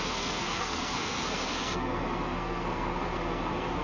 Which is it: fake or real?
fake